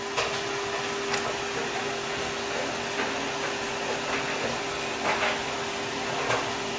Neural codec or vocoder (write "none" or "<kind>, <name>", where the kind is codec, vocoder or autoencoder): none